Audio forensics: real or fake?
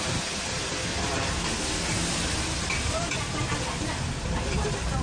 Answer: real